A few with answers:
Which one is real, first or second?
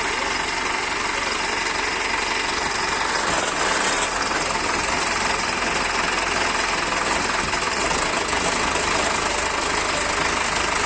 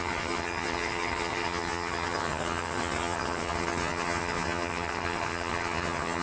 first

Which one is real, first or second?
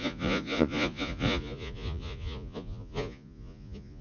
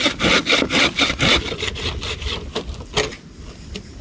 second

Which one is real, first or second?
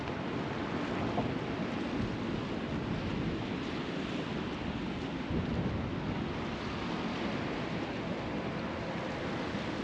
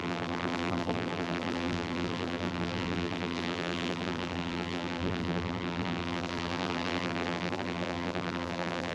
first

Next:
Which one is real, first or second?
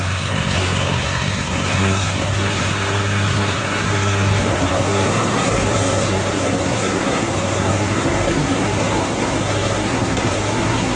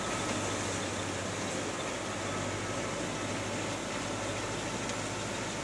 second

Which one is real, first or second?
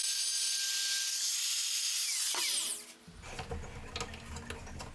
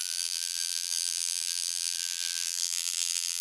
first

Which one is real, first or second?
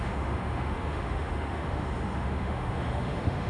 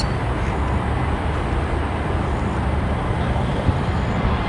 second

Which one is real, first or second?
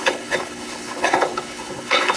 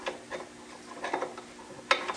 second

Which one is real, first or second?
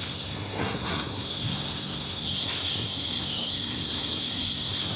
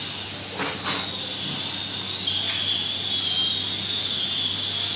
second